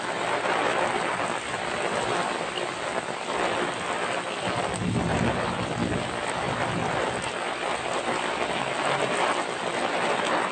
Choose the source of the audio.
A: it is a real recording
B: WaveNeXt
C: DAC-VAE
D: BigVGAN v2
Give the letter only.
A